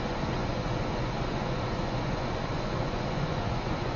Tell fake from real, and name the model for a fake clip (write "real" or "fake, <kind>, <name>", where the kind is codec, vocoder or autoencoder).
fake, vocoder, Vocos